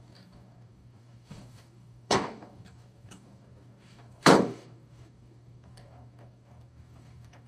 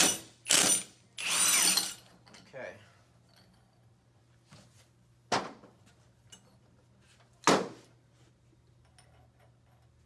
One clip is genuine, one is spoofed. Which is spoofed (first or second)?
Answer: first